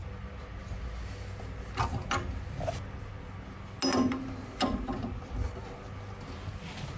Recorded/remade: recorded